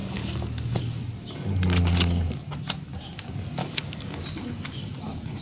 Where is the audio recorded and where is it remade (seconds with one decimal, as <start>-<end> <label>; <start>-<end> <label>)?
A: 0.0-0.8 remade; 0.8-3.6 recorded; 3.6-4.2 remade; 4.2-5.4 recorded